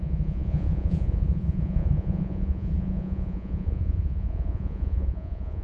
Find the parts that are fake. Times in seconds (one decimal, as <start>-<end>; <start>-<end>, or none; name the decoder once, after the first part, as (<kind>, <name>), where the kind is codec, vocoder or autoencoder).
0.0-5.6 (vocoder, Vocos)

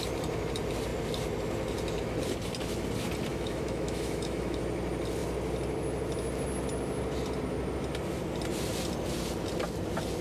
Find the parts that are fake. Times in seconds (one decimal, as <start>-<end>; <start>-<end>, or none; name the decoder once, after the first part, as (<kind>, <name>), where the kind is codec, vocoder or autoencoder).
3.3-4.6 (autoencoder, DAC-VAE)

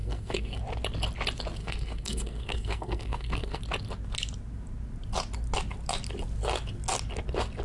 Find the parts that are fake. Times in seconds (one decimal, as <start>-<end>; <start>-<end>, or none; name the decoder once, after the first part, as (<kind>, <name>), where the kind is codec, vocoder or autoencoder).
0.0-0.6 (codec, SNAC); 1.6-3.6

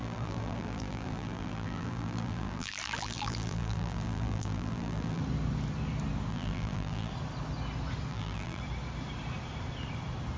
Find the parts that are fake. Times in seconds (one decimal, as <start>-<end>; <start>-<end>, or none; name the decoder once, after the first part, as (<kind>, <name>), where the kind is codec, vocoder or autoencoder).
0.0-5.2 (vocoder, BigVGAN v2); 6.3-7.1; 8.1-8.6

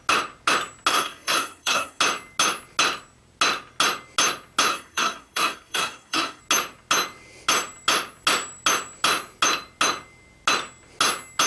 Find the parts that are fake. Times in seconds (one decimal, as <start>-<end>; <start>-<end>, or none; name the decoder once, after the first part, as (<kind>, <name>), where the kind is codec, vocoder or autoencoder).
0.9-2.0 (codec, SNAC); 4.7-6.4

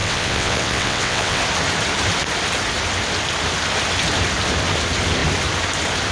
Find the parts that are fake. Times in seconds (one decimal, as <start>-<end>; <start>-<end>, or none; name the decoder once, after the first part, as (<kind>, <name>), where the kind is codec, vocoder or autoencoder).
0.0-1.4 (vocoder, WaveNeXt)

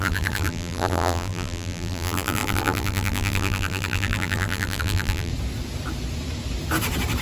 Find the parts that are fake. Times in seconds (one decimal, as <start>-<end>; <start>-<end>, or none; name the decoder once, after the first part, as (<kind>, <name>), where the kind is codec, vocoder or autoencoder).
0.0-5.3 (vocoder, BigVGAN v2)